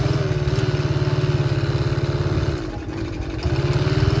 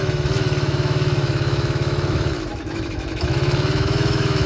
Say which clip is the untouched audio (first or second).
first